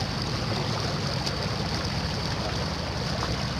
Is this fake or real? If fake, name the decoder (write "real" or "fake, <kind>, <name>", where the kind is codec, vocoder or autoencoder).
real